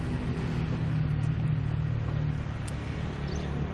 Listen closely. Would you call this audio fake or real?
real